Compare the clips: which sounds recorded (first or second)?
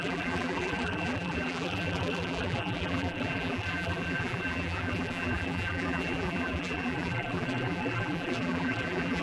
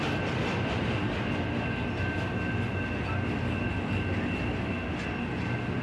second